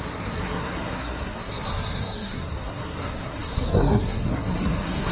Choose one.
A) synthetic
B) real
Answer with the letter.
A